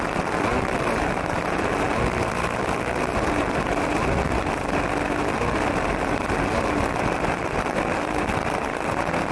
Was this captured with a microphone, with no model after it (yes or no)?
yes